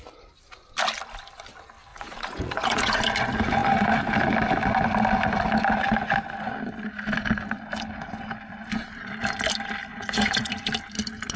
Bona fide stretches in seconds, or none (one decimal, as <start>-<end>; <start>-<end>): 0.0-1.9; 3.0-9.9; 10.5-11.4